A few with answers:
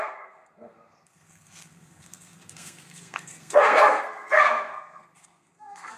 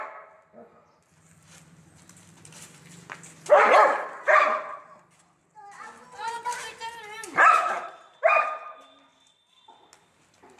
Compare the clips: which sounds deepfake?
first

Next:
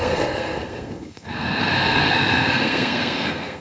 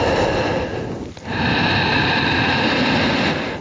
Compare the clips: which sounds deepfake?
first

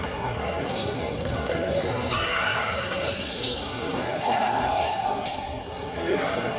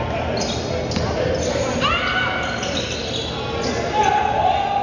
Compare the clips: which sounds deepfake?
first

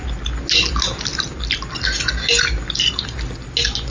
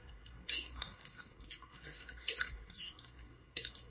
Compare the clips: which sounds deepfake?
second